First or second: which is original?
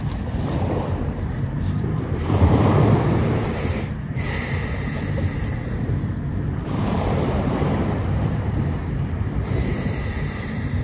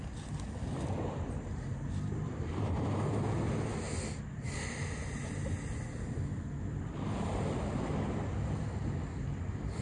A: second